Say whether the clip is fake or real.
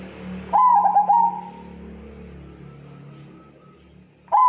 real